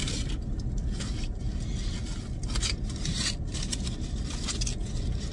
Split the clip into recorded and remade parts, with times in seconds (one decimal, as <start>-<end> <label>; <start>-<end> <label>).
0.0-5.3 recorded